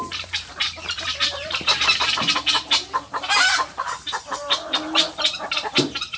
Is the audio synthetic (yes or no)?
yes